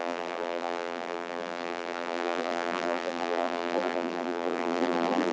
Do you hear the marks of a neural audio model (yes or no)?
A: yes